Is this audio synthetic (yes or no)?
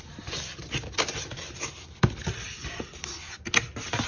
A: no